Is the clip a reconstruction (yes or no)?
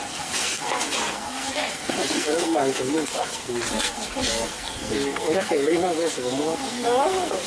yes